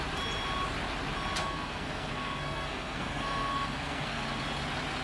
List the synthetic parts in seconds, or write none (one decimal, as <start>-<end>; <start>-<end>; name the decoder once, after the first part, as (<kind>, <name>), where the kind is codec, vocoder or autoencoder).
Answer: 1.4-4.2 (codec, SNAC)